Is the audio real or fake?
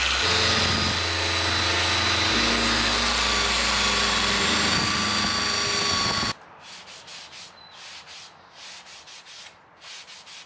real